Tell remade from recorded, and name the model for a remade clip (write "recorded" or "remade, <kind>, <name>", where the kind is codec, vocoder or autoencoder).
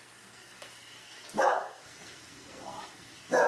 remade, codec, SNAC